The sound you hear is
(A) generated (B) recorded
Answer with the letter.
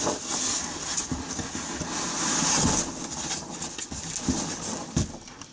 B